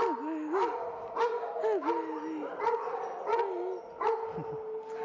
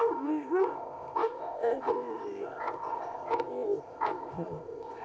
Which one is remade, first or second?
second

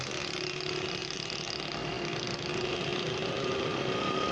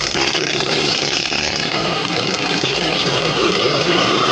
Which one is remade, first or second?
second